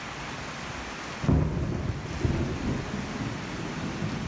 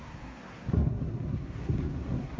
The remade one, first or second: second